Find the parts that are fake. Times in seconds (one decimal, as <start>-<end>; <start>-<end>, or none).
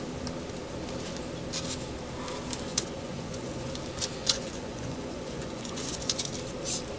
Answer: 2.7-3.7; 4.2-6.3